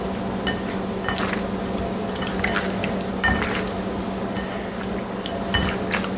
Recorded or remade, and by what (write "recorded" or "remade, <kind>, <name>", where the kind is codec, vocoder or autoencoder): recorded